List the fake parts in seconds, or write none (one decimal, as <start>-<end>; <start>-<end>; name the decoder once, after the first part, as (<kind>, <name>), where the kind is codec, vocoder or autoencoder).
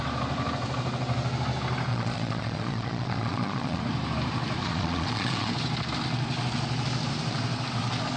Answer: 1.9-3.8 (vocoder, Vocos); 4.6-5.5